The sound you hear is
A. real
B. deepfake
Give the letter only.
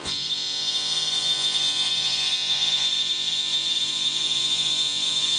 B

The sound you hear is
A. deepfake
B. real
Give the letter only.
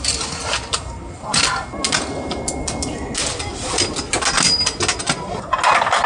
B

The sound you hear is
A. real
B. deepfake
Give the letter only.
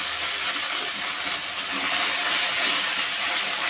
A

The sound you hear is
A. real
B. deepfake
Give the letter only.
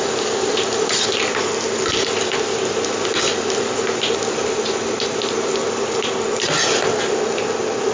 A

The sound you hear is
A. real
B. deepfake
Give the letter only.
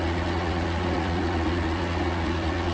B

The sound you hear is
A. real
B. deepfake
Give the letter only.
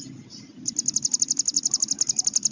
A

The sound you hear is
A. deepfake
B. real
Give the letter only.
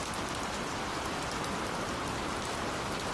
B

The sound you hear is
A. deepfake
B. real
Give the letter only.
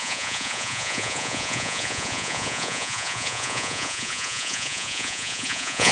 A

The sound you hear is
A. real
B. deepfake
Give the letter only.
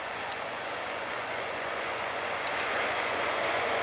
B